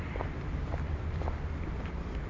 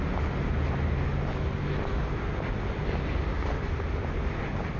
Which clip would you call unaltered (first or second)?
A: second